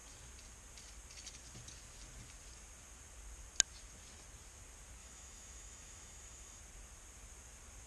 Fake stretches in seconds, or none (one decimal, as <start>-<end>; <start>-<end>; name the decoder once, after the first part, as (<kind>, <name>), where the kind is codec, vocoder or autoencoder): 5.0-6.6 (autoencoder, DAC-VAE)